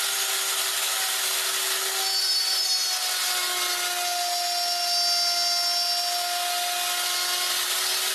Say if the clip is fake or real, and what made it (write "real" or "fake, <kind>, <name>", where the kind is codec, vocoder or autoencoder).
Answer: real